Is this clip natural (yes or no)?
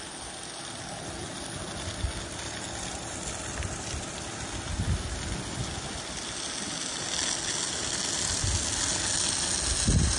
yes